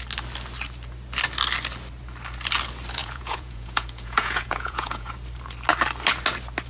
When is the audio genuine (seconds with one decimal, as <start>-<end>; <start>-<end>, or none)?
0.0-3.0; 5.1-6.7